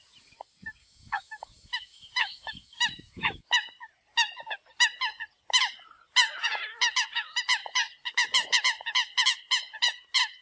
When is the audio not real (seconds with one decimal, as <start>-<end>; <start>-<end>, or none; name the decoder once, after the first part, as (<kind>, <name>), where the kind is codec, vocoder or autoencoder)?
0.8-3.5 (autoencoder, DAC-VAE)